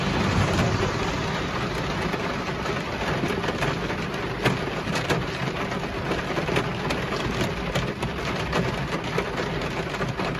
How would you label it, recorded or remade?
recorded